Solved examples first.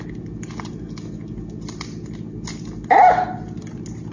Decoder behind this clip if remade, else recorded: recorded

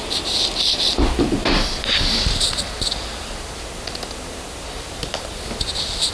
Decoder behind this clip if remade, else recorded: recorded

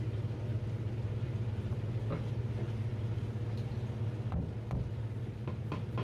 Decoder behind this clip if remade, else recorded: recorded